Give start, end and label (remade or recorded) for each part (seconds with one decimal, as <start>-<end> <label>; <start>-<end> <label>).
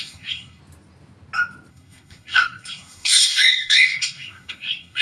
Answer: 0.0-0.6 remade; 0.6-1.7 recorded; 1.7-5.0 remade